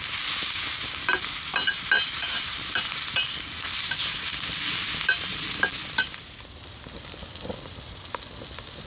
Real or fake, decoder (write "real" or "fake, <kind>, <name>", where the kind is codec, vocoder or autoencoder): fake, vocoder, BigVGAN v2